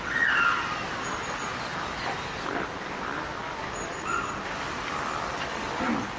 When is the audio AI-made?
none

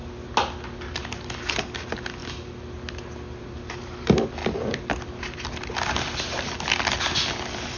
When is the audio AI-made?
none

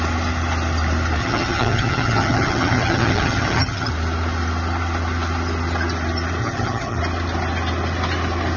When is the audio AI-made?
1.2-3.9 (vocoder, HiFi-GAN); 6.4-7.0

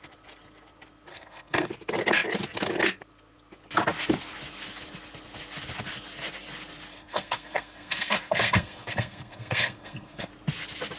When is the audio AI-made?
1.1-1.7 (codec, SNAC); 6.9-10.3

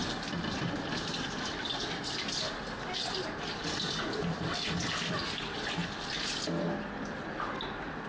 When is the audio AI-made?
none